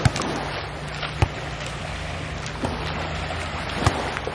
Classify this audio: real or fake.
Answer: real